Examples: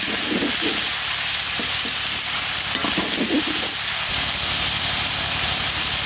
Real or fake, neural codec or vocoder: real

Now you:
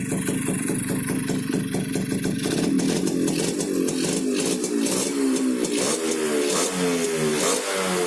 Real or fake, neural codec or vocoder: real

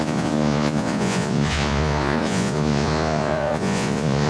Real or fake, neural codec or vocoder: fake, vocoder, Vocos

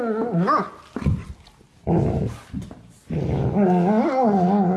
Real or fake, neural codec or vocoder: real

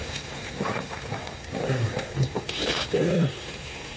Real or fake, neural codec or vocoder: fake, codec, SNAC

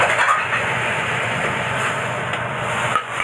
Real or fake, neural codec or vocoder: fake, vocoder, Vocos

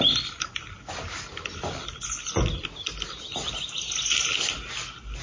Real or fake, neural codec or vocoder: real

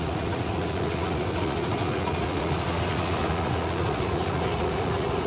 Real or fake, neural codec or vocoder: fake, vocoder, Vocos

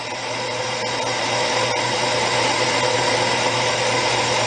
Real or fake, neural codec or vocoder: real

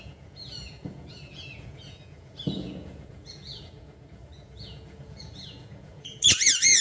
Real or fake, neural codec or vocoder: fake, vocoder, Vocos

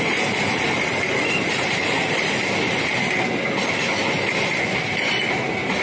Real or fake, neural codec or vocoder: real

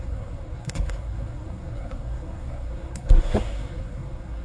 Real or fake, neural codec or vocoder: fake, codec, SNAC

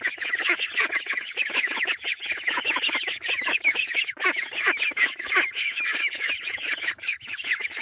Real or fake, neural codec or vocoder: fake, autoencoder, DAC-VAE